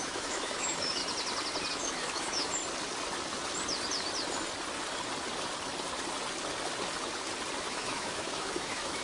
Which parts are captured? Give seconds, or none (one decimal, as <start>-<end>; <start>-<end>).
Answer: 1.0-1.7; 2.6-7.6